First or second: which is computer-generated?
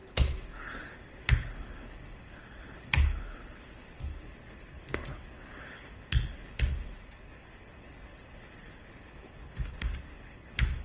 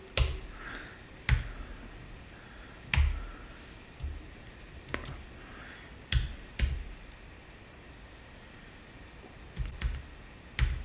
first